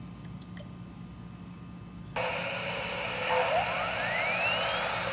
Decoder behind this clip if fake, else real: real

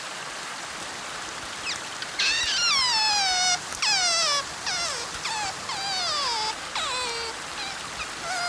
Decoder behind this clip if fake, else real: real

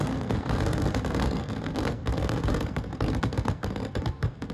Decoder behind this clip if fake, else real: fake, codec, SNAC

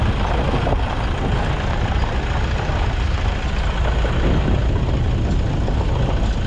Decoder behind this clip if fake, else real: real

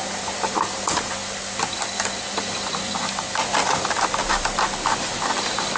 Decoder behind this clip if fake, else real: real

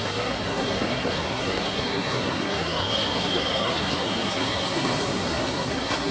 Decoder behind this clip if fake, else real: fake, codec, SNAC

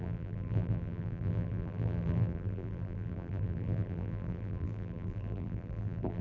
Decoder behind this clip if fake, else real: fake, vocoder, BigVGAN v2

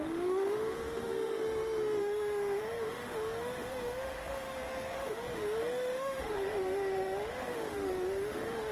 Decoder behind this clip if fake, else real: fake, autoencoder, DAC-VAE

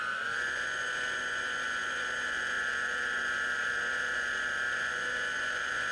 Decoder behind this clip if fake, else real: fake, vocoder, Vocos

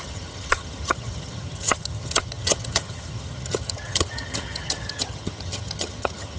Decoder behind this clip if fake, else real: fake, vocoder, HiFi-GAN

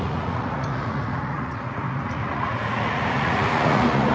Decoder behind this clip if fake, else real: fake, vocoder, Vocos